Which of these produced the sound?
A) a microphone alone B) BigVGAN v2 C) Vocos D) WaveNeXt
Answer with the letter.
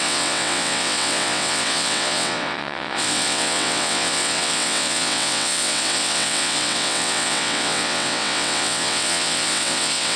D